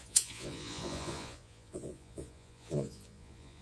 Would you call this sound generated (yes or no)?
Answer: yes